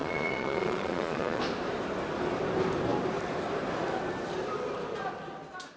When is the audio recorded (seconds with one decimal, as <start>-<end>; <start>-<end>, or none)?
1.4-5.8